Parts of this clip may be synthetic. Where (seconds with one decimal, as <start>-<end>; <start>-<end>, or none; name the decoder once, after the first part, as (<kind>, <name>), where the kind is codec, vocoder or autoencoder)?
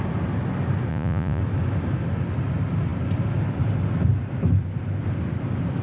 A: 0.9-1.4 (vocoder, Vocos)